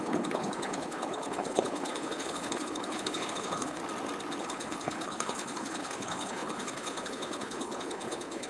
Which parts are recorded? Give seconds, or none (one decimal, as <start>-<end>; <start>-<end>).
3.8-4.4